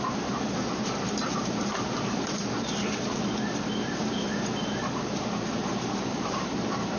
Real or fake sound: fake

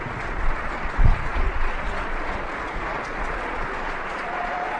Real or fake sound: fake